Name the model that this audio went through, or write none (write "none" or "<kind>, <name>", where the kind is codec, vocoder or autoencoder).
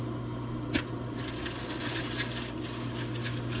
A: none